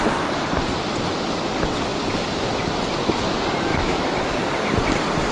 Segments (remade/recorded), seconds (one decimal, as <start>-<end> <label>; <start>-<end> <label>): 0.0-3.7 recorded; 3.7-4.2 remade; 4.2-5.3 recorded